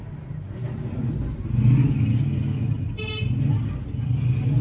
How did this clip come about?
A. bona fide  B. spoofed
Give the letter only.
A